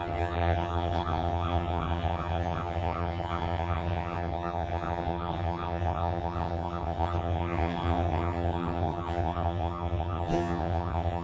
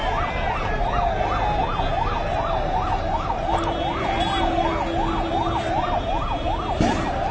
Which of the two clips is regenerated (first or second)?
first